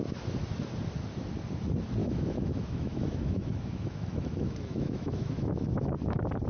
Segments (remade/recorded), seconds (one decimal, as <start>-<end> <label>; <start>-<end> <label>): 0.0-2.0 recorded; 2.0-5.9 remade; 5.9-6.5 recorded